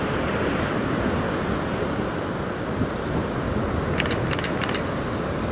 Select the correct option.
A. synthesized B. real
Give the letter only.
A